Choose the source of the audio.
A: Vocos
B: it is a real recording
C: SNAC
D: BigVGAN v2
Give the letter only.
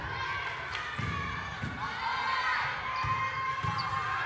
B